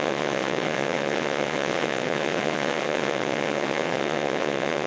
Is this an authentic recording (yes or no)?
no